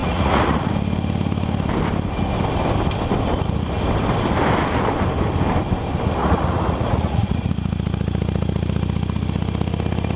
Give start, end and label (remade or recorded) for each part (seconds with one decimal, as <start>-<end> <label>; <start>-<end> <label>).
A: 0.0-0.7 remade; 0.7-6.2 recorded; 6.2-7.5 remade; 7.5-10.2 recorded